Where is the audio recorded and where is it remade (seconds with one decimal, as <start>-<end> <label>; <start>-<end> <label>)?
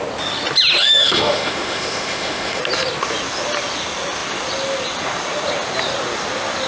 0.0-0.8 recorded; 0.8-2.6 remade; 2.6-6.7 recorded